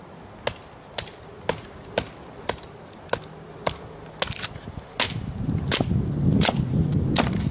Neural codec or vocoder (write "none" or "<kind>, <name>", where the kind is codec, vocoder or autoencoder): none